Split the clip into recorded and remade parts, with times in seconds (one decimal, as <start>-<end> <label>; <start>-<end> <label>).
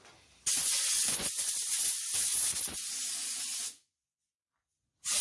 0.0-0.5 recorded; 0.5-2.2 remade; 2.2-3.5 recorded; 3.5-4.3 remade; 4.3-5.2 recorded